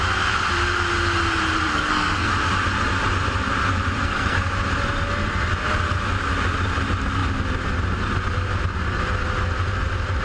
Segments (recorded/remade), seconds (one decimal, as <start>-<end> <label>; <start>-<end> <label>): 0.0-1.7 recorded; 1.7-2.3 remade; 2.3-4.0 recorded; 4.0-4.5 remade; 4.5-10.2 recorded